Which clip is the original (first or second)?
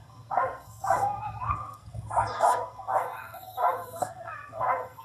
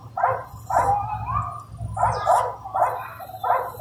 second